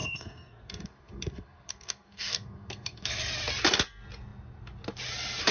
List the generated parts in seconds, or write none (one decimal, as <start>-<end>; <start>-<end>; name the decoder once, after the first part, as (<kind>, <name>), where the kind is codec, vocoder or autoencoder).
0.0-3.3 (codec, SNAC)